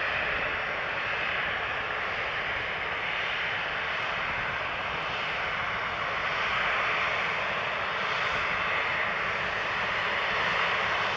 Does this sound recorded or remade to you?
recorded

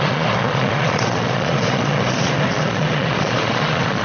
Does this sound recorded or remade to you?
remade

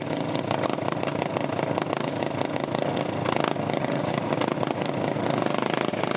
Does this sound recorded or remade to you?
recorded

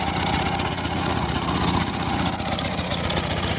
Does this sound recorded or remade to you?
remade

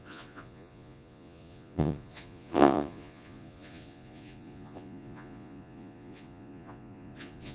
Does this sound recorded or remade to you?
remade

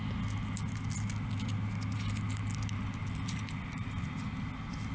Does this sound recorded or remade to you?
recorded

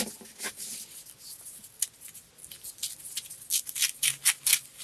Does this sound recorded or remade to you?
recorded